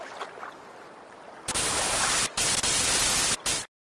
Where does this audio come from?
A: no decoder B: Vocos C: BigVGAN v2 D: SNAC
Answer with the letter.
A